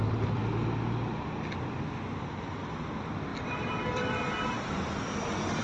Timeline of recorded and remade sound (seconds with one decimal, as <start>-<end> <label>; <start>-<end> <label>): 0.0-0.4 remade; 0.4-2.4 recorded; 2.4-5.6 remade